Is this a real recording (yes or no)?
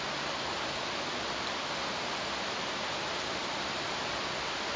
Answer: yes